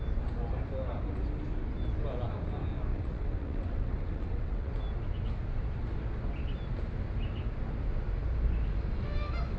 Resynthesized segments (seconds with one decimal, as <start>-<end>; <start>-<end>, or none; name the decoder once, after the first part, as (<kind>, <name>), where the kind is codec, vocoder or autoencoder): 2.9-4.7 (vocoder, WaveNeXt)